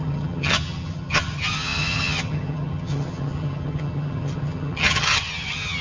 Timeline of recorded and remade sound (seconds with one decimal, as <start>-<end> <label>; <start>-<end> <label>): 0.0-5.8 remade

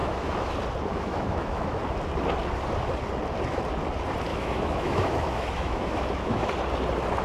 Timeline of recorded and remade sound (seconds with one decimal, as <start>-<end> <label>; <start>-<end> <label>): 0.0-0.5 remade; 0.5-0.9 recorded; 0.9-1.8 remade; 1.8-4.3 recorded; 4.3-6.5 remade; 6.5-7.2 recorded

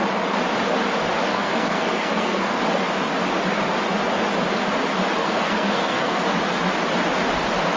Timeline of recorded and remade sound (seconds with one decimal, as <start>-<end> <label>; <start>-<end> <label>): 0.0-1.3 recorded; 1.3-2.6 remade; 2.6-5.2 recorded; 5.2-6.2 remade; 6.2-7.8 recorded

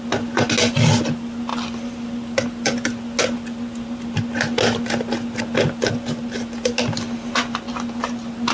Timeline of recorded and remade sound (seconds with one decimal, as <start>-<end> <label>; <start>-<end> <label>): 0.0-8.5 recorded

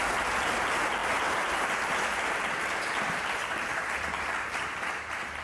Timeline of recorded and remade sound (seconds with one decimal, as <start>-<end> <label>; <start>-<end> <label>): 0.0-1.0 recorded; 1.0-4.2 remade; 4.2-4.7 recorded; 4.7-5.4 remade

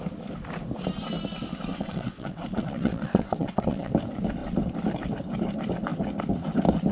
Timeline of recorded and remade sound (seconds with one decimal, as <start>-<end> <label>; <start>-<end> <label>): 0.0-1.7 recorded; 1.7-3.9 remade; 3.9-6.9 recorded